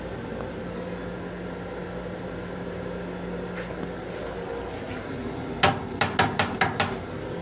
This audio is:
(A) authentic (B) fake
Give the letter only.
A